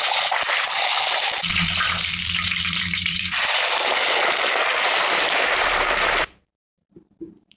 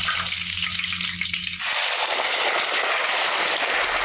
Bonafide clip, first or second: second